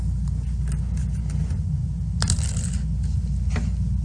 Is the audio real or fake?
real